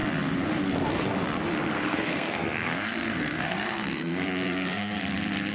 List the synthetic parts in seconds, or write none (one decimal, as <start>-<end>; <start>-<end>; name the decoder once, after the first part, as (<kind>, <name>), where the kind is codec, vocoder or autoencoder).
1.7-5.0 (codec, SNAC)